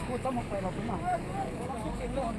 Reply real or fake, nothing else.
fake